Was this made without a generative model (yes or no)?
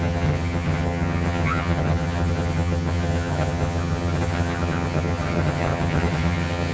no